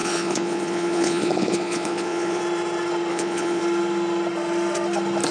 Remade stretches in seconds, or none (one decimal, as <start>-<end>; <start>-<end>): 0.0-2.4; 3.1-3.6

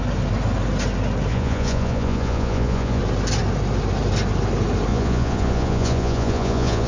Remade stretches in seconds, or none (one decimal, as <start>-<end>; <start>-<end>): 1.3-3.0; 4.9-6.9

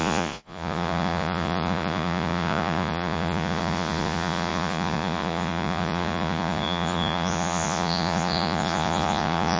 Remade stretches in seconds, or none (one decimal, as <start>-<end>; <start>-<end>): 0.0-9.6

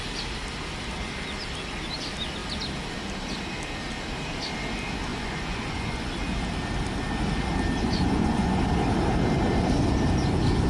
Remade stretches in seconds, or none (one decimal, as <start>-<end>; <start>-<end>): 5.1-6.1; 7.8-8.6

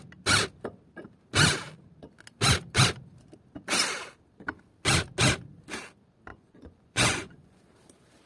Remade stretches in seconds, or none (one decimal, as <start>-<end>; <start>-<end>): 6.3-7.6

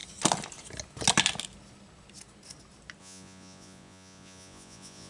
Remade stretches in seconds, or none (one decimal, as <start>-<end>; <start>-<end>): 3.0-5.1

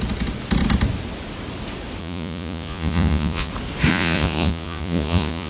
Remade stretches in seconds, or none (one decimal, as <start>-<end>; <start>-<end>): 2.0-3.5; 3.9-5.5